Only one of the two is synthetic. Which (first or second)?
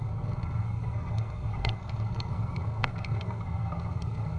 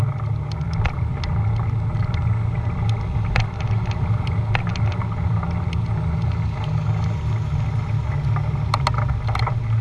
first